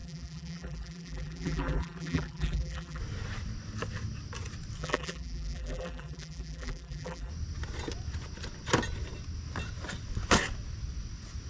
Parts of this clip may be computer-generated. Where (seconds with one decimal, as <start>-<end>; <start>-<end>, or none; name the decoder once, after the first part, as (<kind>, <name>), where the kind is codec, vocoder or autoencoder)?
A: 0.0-3.0 (vocoder, BigVGAN v2); 4.8-7.3